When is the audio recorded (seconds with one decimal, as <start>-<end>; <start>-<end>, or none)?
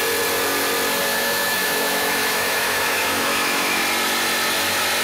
0.0-1.1; 3.8-5.0